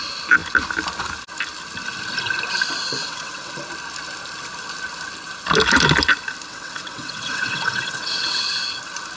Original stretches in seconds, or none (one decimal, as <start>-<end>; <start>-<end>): 0.0-3.0; 3.5-6.5; 8.4-9.2

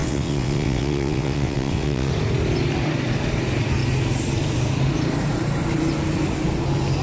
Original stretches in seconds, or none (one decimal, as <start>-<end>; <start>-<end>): 2.1-7.0

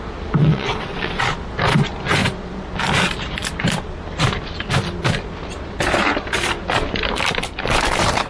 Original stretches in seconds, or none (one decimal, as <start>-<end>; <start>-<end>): 0.0-0.4; 1.2-8.3

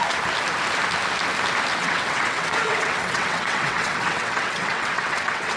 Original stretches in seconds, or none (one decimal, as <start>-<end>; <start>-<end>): 0.0-1.8

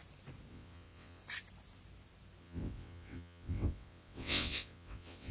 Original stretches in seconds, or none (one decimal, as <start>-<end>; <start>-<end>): 0.0-0.5; 1.2-2.4

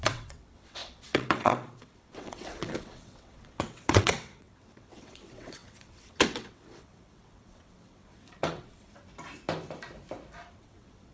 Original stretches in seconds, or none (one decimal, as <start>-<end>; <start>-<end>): 9.0-10.5